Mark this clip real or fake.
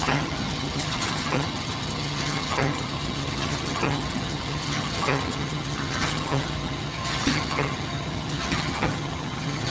fake